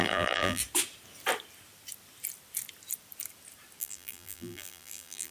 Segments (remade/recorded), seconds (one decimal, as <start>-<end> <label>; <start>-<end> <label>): 0.0-0.6 remade; 0.6-3.8 recorded; 3.8-5.3 remade